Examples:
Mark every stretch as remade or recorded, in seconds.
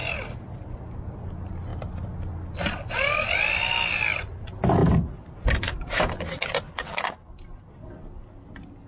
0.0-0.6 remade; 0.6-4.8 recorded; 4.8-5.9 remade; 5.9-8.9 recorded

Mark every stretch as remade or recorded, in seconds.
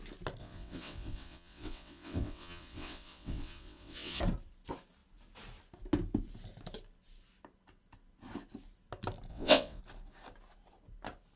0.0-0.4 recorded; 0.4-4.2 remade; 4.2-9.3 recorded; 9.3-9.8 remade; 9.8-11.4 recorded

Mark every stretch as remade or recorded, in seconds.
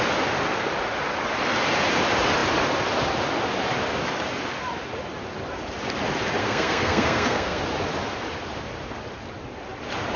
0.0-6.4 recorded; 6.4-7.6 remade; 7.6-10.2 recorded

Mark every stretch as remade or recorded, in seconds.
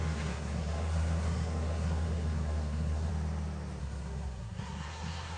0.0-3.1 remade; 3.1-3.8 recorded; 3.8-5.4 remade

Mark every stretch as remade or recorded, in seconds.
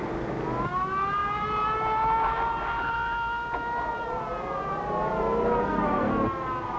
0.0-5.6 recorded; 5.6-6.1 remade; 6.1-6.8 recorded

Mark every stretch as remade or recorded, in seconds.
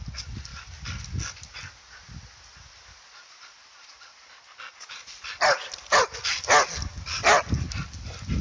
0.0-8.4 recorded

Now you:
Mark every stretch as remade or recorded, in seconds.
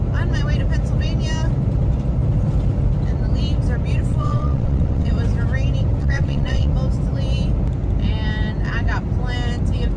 0.0-4.1 recorded; 4.1-5.1 remade; 5.1-6.0 recorded; 6.0-6.7 remade; 6.7-10.0 recorded